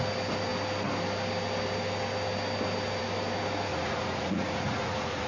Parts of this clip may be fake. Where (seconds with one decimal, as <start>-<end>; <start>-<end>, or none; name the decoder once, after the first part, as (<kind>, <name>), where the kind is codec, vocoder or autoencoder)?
3.7-5.3 (vocoder, Vocos)